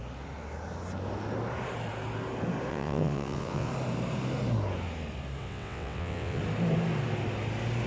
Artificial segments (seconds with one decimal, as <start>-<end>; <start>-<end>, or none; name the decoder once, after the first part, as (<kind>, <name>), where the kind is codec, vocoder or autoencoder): 2.7-3.7 (vocoder, WaveNeXt); 5.4-6.4